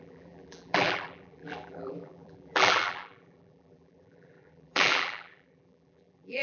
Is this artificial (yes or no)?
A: yes